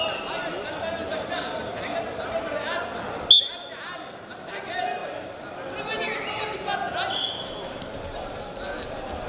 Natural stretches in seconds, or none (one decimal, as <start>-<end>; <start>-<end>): 0.0-9.3